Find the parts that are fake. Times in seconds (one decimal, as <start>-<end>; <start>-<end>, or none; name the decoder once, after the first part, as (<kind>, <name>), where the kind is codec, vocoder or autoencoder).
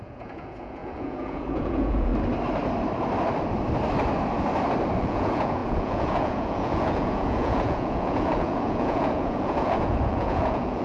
0.0-2.1 (vocoder, Vocos); 5.0-10.8